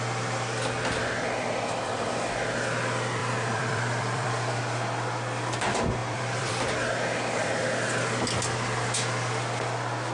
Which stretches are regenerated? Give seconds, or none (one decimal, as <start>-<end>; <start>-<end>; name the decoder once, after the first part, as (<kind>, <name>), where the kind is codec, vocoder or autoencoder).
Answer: 3.2-4.6 (vocoder, BigVGAN v2); 6.0-6.7